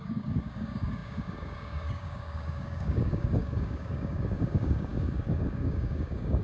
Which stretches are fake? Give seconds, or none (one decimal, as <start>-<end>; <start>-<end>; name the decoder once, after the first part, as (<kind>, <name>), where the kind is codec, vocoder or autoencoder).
0.0-6.4 (codec, DAC)